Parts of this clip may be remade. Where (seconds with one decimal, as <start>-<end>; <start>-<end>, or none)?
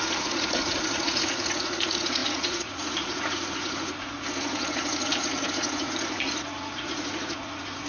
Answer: 0.0-7.9